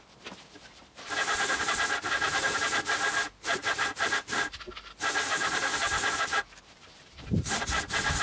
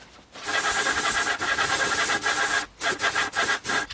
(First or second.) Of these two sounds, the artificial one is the first